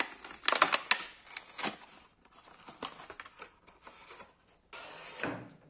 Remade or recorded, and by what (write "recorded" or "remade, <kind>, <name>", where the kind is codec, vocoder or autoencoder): recorded